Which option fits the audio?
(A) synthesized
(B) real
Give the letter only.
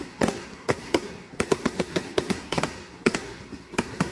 A